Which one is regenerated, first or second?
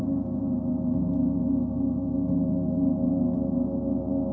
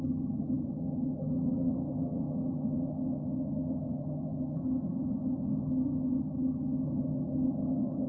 second